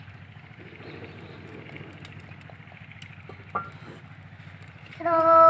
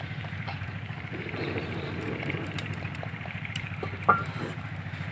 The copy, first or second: second